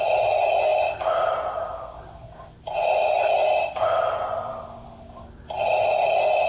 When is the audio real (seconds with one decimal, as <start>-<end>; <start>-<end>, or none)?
0.0-0.7; 2.0-6.5